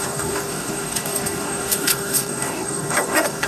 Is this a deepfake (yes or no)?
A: yes